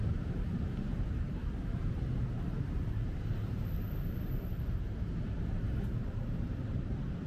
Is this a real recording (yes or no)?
no